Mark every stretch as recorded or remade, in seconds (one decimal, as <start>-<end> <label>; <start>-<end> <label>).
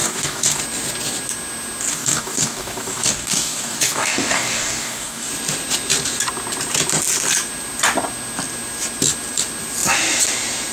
0.0-0.6 remade; 0.6-1.9 recorded; 1.9-5.3 remade; 5.3-10.7 recorded